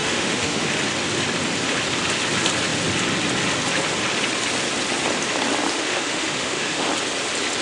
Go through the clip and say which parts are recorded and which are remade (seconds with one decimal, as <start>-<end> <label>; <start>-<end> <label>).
0.0-0.7 remade; 0.7-5.7 recorded; 5.7-6.9 remade; 6.9-7.6 recorded